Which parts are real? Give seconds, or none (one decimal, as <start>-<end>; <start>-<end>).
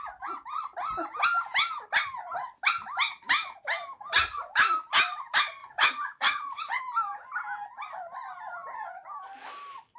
0.0-5.6; 6.8-10.0